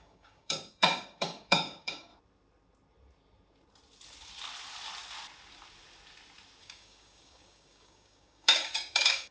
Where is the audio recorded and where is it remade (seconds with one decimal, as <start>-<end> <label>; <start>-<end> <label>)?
0.0-2.1 remade; 2.1-6.6 recorded; 6.6-9.3 remade